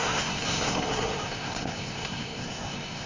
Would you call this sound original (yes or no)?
no